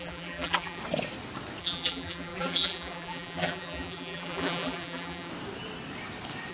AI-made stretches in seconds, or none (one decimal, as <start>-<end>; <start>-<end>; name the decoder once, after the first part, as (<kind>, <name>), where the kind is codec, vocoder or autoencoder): 0.0-0.8 (vocoder, BigVGAN v2); 1.6-5.3